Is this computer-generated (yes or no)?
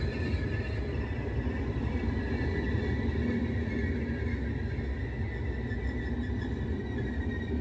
no